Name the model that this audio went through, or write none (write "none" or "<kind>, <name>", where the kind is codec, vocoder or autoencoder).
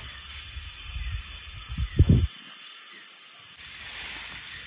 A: none